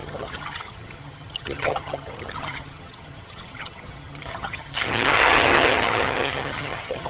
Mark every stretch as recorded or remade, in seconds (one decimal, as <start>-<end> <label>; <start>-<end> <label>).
0.0-7.1 remade